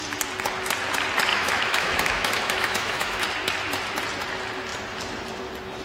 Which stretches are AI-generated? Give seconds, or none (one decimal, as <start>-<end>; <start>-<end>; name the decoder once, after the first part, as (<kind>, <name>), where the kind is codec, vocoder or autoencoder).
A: 1.3-3.2 (autoencoder, DAC-VAE)